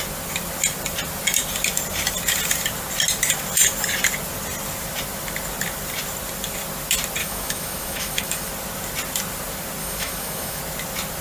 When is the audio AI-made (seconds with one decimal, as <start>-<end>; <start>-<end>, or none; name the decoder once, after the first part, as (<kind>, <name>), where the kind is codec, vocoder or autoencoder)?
7.2-8.5 (autoencoder, DAC-VAE); 9.8-10.6